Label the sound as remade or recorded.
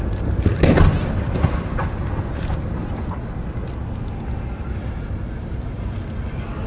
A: recorded